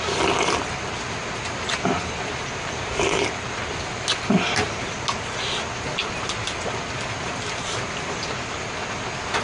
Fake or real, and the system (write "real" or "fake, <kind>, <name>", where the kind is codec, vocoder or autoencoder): real